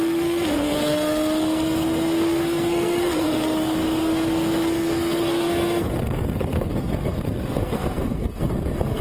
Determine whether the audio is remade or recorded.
remade